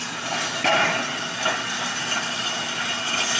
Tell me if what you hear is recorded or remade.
recorded